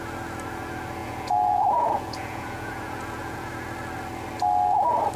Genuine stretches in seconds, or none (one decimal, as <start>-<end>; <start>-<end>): 0.0-1.0; 3.5-5.2